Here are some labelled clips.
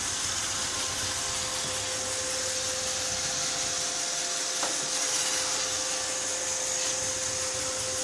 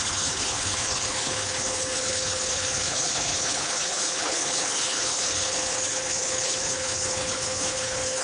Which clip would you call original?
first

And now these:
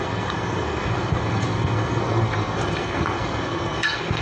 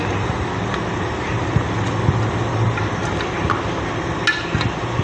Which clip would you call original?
second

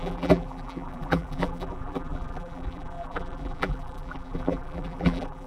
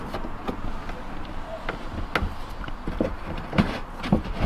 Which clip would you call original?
second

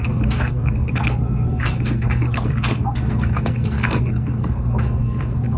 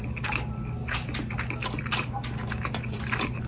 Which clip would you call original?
second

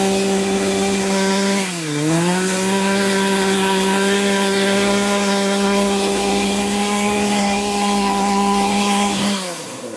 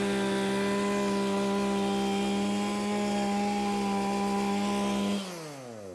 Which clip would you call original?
second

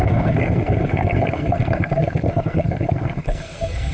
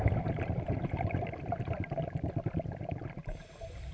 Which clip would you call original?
second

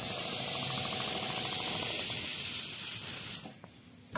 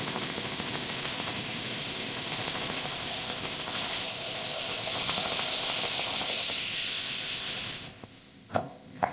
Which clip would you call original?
first